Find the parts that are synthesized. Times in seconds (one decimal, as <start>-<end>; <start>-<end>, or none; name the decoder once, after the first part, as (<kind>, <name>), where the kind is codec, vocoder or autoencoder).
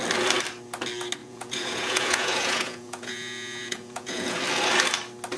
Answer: 1.2-4.4 (vocoder, Vocos)